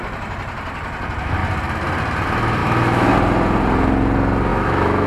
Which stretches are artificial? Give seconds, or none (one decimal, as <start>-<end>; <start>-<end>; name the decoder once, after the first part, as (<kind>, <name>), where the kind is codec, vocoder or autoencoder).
2.6-3.1 (autoencoder, DAC-VAE); 4.5-5.1

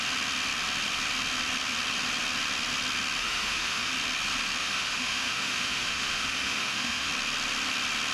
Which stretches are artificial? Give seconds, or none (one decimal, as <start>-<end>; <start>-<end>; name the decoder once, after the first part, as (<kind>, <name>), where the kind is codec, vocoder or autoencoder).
3.2-3.9 (autoencoder, DAC-VAE); 4.6-7.1

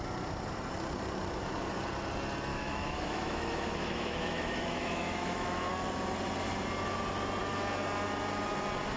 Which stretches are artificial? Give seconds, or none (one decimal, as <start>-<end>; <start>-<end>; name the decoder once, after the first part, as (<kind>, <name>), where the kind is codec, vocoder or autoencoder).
2.5-5.7 (autoencoder, DAC-VAE)

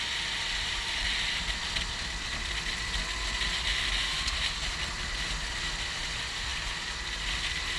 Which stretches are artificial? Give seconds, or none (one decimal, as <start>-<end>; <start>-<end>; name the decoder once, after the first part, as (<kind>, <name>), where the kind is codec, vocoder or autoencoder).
none

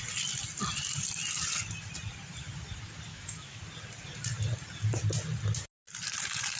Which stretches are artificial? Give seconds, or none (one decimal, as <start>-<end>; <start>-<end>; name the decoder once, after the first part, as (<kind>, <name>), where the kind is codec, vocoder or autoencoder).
3.1-3.6 (autoencoder, DAC-VAE)

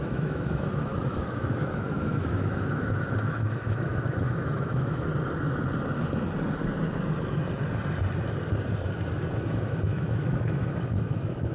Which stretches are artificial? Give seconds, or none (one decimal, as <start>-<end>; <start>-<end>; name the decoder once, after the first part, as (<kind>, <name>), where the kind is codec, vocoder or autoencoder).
0.0-5.1 (autoencoder, DAC-VAE); 9.4-11.5

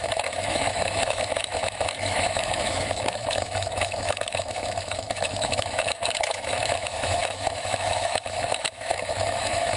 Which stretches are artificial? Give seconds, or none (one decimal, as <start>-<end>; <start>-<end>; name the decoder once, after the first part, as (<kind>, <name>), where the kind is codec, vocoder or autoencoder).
0.0-9.8 (autoencoder, DAC-VAE)